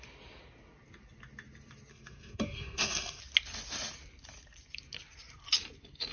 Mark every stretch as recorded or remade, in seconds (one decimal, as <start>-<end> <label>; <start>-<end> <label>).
0.0-1.9 recorded; 1.9-3.2 remade; 3.2-6.1 recorded